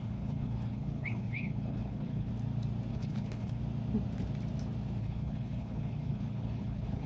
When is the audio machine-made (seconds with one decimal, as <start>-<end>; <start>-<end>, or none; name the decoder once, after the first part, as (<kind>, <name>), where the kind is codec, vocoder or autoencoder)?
0.0-2.3 (codec, HILCodec); 2.9-3.6; 5.0-7.1